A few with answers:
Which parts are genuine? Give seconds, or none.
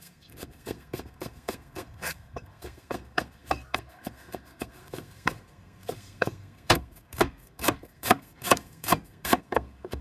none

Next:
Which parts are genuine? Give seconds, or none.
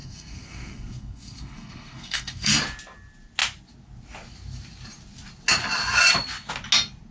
2.6-7.1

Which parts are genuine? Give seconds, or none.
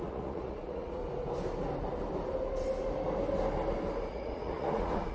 1.0-4.1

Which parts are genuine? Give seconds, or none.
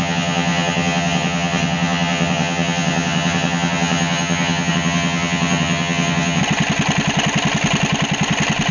6.4-8.7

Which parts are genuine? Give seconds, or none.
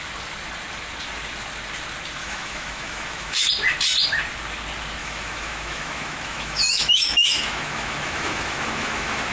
0.0-2.2; 3.5-5.0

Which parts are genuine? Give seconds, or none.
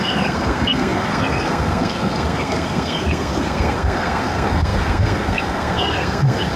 none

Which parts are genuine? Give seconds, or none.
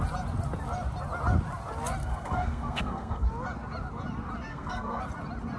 0.0-2.0; 3.3-4.5; 5.0-5.6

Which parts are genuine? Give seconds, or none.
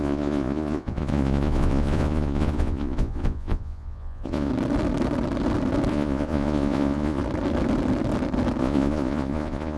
4.5-5.9; 7.2-8.6